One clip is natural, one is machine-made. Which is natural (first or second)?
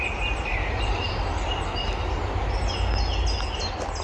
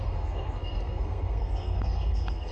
first